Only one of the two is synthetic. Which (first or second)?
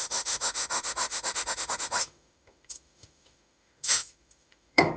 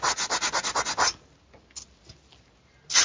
first